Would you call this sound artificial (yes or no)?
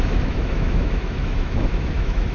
yes